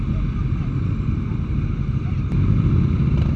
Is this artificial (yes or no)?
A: no